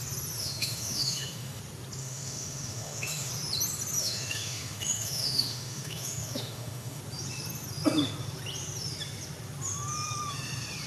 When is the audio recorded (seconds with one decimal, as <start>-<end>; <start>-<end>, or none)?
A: 0.0-0.4; 1.6-2.0; 3.3-4.0; 7.0-10.9